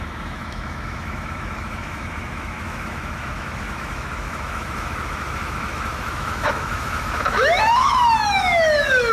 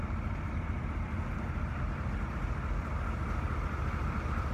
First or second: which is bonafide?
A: second